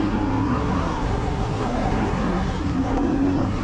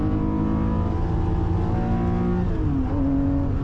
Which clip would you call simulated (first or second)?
first